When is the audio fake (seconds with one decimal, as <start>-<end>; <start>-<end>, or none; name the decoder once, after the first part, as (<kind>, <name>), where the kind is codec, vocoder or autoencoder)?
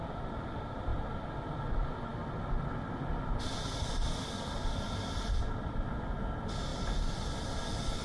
0.0-0.9 (vocoder, BigVGAN v2); 1.6-2.1; 5.6-8.0